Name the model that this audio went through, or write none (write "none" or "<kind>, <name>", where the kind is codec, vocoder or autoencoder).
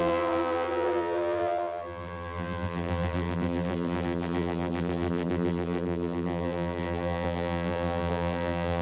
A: vocoder, BigVGAN v2